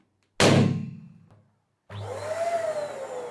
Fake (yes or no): no